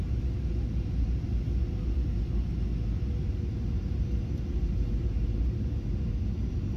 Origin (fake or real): real